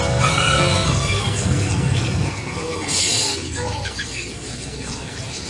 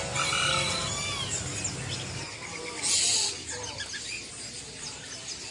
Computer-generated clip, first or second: first